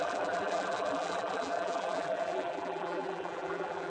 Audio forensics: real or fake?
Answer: fake